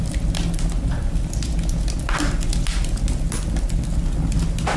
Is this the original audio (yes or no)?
yes